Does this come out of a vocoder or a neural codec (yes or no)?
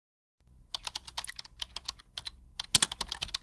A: no